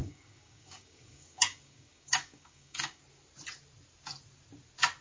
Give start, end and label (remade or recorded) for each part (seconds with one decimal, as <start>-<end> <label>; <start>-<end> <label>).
0.0-3.0 remade; 3.0-5.0 recorded